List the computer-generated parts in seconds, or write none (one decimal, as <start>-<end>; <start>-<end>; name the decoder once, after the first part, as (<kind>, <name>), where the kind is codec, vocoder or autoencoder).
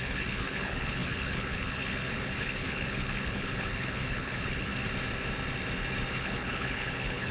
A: 0.0-4.7 (codec, HILCodec); 6.1-7.3